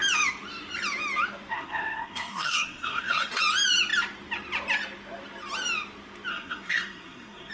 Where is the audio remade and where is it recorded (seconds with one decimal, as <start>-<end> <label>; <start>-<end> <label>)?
0.0-1.5 recorded; 1.5-3.4 remade; 3.4-6.3 recorded; 6.3-7.5 remade

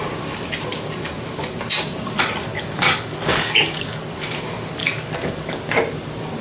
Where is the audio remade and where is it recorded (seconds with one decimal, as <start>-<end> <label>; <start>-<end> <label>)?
0.0-2.5 recorded; 2.5-4.0 remade; 4.0-4.8 recorded; 4.8-5.7 remade; 5.7-6.4 recorded

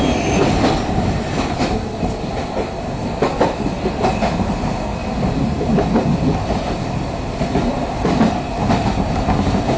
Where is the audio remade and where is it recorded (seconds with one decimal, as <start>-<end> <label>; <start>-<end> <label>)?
0.0-0.4 recorded; 0.4-3.3 remade; 3.3-5.0 recorded; 5.0-8.3 remade; 8.3-9.8 recorded

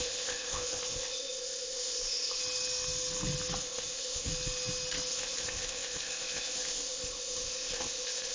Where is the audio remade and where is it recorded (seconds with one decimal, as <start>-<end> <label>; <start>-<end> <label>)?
0.0-2.4 remade; 2.4-3.6 recorded; 3.6-4.3 remade; 4.3-5.1 recorded; 5.1-8.3 remade

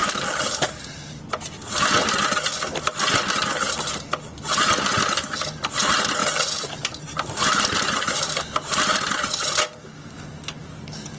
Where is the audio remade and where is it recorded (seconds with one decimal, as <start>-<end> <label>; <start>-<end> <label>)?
0.0-1.2 remade; 1.2-6.2 recorded; 6.2-8.3 remade; 8.3-11.2 recorded

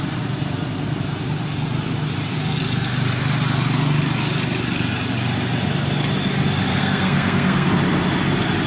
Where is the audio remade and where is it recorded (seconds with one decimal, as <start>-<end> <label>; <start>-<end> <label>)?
0.0-6.7 recorded; 6.7-7.7 remade; 7.7-8.7 recorded

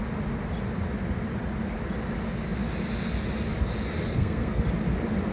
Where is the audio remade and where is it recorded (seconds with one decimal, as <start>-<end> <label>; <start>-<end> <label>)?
0.0-4.1 recorded; 4.1-4.6 remade; 4.6-5.3 recorded